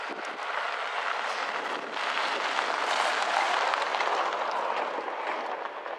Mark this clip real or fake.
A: real